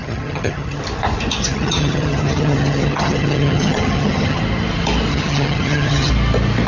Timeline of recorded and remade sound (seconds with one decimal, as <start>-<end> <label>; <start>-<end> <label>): 0.0-0.8 remade; 0.8-1.4 recorded; 1.4-4.4 remade; 4.4-5.1 recorded; 5.1-6.1 remade; 6.1-6.7 recorded